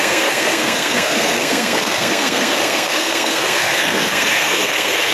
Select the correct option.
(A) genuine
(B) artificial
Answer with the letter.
B